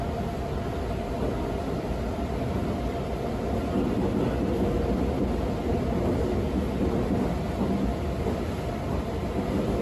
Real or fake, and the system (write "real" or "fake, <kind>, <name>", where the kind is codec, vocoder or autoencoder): real